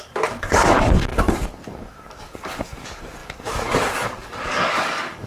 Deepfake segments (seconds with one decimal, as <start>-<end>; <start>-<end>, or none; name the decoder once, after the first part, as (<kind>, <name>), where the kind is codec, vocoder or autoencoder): 0.0-5.3 (codec, DAC)